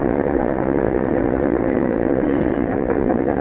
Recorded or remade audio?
remade